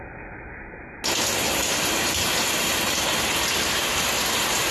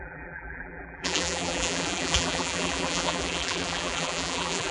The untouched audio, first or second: first